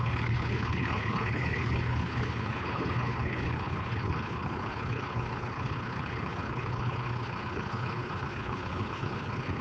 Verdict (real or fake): fake